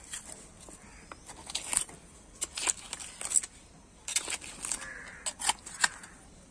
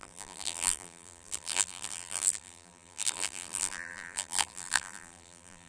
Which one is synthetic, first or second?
second